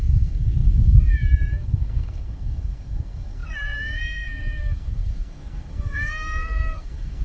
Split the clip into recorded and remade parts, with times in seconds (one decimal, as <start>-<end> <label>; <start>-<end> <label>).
0.0-7.2 remade